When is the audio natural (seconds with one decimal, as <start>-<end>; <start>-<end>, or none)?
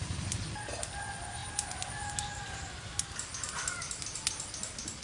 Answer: 0.0-5.0